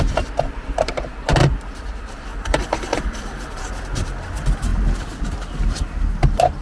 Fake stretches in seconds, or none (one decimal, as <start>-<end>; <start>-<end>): 2.3-3.7